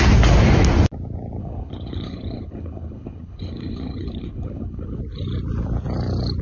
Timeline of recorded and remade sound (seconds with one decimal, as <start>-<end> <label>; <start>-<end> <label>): 0.0-1.4 recorded; 1.4-5.0 remade; 5.0-6.4 recorded